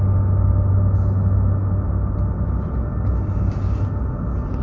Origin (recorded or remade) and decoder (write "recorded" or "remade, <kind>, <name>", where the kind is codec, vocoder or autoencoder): recorded